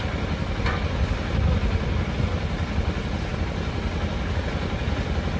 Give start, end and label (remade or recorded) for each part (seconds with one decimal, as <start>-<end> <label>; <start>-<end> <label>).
0.0-5.4 recorded